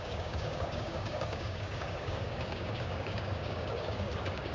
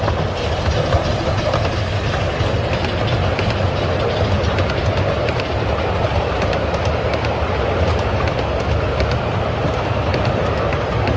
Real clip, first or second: second